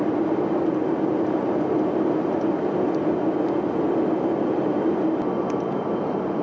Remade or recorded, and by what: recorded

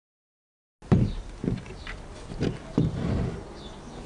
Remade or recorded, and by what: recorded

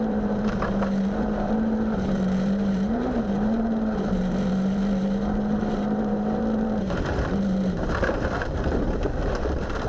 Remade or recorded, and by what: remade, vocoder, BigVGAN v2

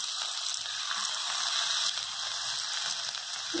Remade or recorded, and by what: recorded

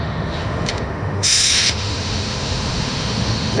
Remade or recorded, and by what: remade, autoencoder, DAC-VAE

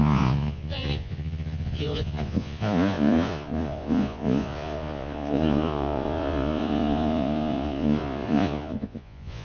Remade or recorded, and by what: remade, vocoder, Vocos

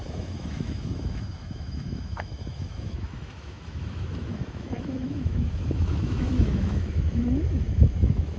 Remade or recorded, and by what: remade, autoencoder, DAC-VAE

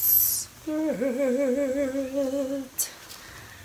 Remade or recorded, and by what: recorded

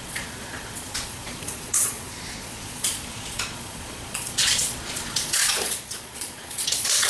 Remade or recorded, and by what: remade, vocoder, Vocos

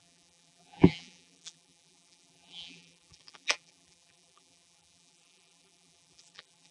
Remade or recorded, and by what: remade, vocoder, BigVGAN v2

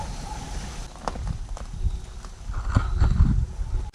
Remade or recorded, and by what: recorded